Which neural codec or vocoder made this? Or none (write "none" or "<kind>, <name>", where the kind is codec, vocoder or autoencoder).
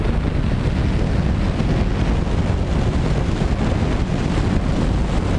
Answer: none